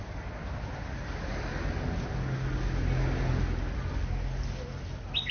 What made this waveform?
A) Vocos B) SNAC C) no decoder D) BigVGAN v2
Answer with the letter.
C